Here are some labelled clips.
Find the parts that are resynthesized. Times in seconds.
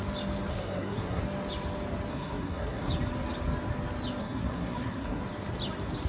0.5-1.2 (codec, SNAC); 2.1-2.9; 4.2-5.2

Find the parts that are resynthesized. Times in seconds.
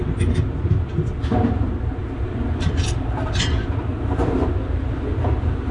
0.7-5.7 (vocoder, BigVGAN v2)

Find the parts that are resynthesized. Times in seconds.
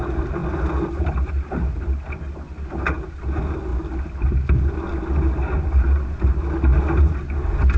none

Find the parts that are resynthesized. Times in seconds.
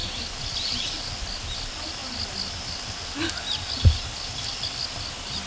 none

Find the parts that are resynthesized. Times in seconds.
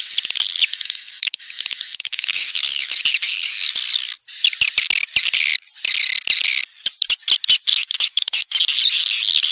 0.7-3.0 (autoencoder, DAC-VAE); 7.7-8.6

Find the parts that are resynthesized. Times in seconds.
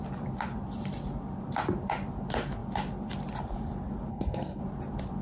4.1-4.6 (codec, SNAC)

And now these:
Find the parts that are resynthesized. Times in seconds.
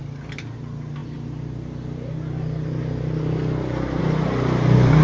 none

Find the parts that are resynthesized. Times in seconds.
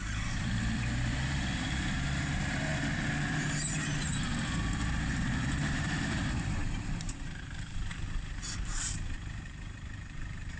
0.0-2.7 (vocoder, BigVGAN v2); 3.2-10.6